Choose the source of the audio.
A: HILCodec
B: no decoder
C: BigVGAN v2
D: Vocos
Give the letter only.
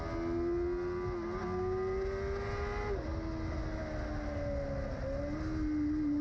B